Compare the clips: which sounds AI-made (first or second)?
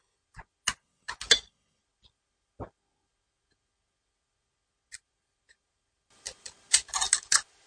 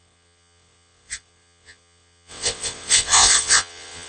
second